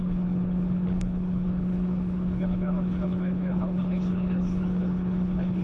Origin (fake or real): fake